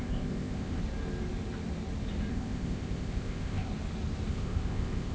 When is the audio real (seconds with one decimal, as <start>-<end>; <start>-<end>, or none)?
0.8-2.3; 3.7-4.3